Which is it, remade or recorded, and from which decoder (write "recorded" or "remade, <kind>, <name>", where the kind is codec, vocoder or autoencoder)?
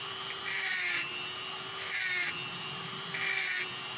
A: remade, vocoder, BigVGAN v2